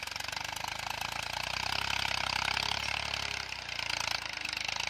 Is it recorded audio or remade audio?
recorded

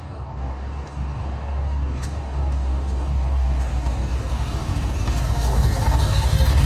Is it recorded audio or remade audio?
remade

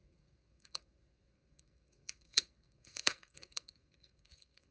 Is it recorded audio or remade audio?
remade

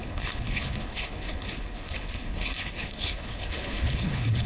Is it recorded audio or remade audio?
remade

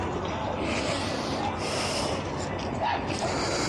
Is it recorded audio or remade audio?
recorded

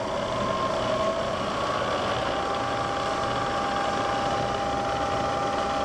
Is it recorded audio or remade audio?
recorded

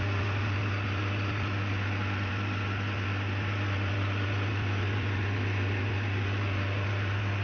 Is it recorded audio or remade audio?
recorded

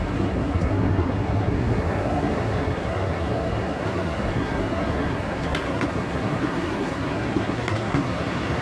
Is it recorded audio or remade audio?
remade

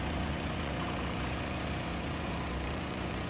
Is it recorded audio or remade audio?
remade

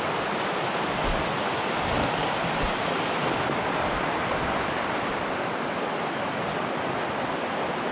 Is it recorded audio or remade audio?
recorded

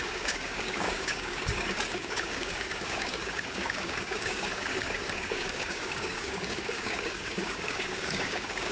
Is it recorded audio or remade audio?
remade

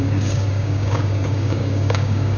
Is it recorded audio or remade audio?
remade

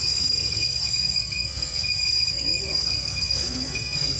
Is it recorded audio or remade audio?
remade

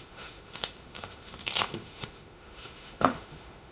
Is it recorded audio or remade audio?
remade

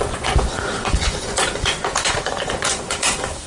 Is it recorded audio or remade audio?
remade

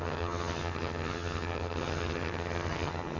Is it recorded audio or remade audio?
remade